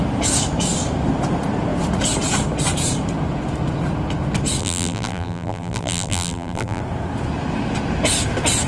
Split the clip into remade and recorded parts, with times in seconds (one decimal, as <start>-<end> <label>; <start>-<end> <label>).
0.0-4.6 recorded; 4.6-6.8 remade; 6.8-8.7 recorded